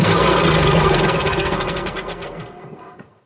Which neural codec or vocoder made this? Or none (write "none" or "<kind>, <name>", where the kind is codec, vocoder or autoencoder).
codec, SNAC